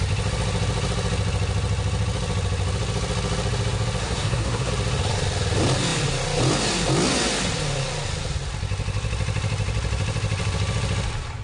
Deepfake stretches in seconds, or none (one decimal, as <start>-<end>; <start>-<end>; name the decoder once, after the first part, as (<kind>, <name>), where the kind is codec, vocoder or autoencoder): 4.0-4.7 (codec, SNAC)